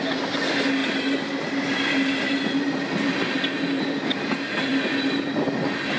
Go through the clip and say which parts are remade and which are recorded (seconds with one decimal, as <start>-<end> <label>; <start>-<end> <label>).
0.0-6.0 recorded